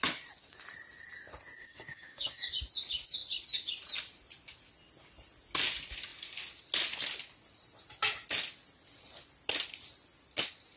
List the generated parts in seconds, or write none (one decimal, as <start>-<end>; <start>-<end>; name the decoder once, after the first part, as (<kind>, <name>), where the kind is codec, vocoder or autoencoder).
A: 1.6-2.5 (codec, DAC)